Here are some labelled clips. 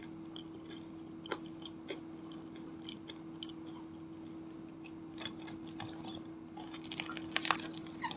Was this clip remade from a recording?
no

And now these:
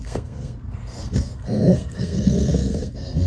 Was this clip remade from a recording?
yes